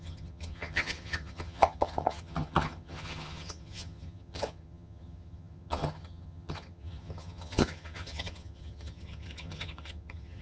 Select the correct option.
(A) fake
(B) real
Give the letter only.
A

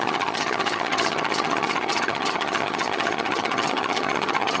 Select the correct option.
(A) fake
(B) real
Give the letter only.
A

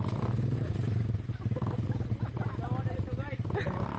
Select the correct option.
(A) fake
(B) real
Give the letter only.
B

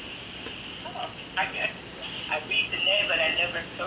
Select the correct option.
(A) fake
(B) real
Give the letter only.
B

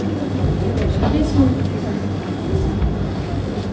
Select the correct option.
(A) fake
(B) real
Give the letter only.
B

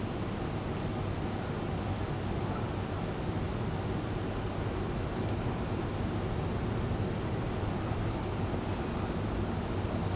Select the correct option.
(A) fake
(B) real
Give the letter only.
B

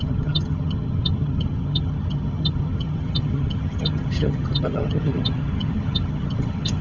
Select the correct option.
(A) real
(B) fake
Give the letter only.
B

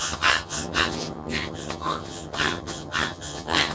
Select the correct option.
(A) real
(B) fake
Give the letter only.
B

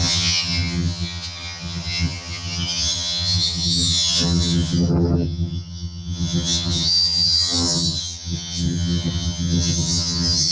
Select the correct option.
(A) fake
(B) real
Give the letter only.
A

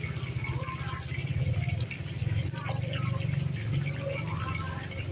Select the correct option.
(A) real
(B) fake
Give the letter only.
A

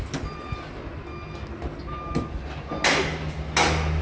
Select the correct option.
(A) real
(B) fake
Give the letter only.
A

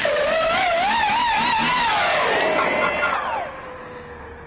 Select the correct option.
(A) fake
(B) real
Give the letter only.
B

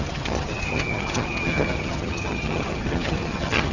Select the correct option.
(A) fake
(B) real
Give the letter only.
A